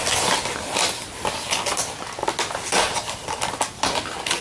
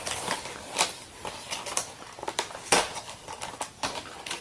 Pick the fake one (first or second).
second